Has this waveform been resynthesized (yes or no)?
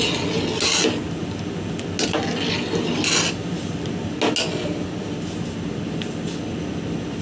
no